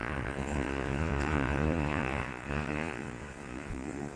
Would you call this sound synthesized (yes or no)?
yes